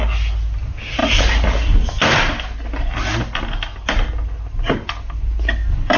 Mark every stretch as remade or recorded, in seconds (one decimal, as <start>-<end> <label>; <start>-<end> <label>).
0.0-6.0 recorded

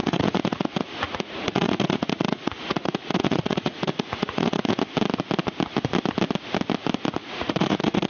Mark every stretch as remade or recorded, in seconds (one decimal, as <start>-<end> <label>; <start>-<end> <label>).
0.0-4.8 remade; 4.8-7.2 recorded; 7.2-8.1 remade

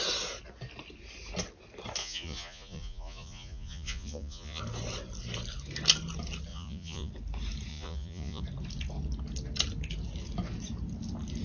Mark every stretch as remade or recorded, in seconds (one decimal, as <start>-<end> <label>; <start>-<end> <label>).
0.0-2.0 recorded; 2.0-4.6 remade; 4.6-6.5 recorded; 6.5-7.1 remade; 7.1-7.7 recorded; 7.7-8.4 remade; 8.4-11.4 recorded

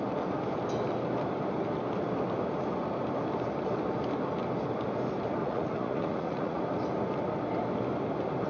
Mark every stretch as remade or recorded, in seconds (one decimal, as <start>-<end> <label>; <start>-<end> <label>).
0.0-5.4 recorded; 5.4-6.6 remade; 6.6-8.5 recorded